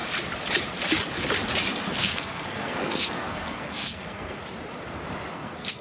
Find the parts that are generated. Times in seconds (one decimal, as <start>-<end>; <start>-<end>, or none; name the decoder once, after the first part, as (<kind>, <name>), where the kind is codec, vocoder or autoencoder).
2.0-4.4 (codec, SNAC); 5.3-5.8